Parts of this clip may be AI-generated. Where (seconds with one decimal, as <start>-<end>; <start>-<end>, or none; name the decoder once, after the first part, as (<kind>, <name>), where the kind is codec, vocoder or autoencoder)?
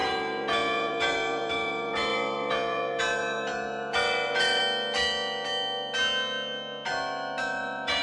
0.0-4.6 (vocoder, Vocos); 7.4-8.0